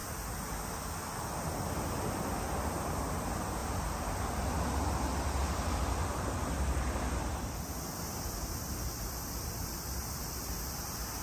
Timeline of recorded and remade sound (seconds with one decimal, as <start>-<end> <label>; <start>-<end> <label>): 0.0-0.5 remade; 0.5-3.6 recorded; 3.6-4.3 remade; 4.3-7.3 recorded; 7.3-10.4 remade; 10.4-11.2 recorded